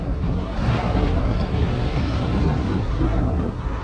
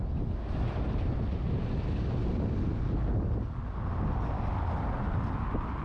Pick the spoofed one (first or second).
first